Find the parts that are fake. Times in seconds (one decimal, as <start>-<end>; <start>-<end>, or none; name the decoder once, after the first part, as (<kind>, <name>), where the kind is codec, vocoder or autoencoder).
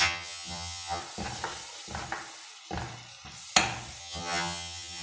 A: 0.0-1.0 (vocoder, HiFi-GAN); 4.0-5.0